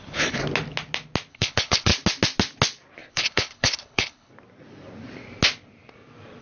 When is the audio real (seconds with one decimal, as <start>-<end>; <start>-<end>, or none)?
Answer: 0.4-1.3; 1.9-3.1; 4.3-6.4